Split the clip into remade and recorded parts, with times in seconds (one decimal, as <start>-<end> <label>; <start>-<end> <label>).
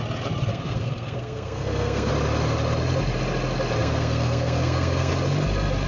0.0-0.5 recorded; 0.5-2.1 remade; 2.1-3.8 recorded; 3.8-5.1 remade; 5.1-5.9 recorded